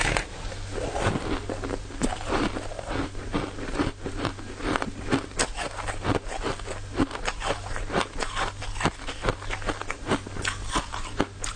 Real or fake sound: real